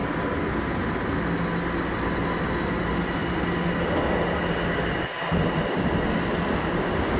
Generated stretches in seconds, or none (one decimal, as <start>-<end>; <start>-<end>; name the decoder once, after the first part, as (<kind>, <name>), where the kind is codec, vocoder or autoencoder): none